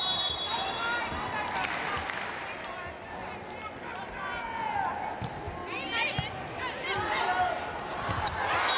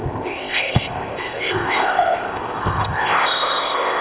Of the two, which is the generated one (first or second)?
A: second